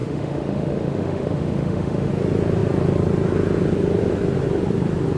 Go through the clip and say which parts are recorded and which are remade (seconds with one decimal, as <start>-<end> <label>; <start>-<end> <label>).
0.0-2.1 remade; 2.1-5.2 recorded